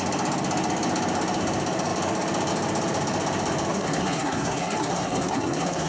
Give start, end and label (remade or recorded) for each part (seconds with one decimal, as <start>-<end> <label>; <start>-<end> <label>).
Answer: 0.0-3.7 recorded; 3.7-5.9 remade